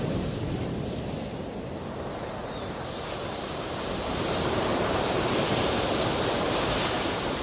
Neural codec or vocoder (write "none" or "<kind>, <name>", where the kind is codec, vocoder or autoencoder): vocoder, BigVGAN v2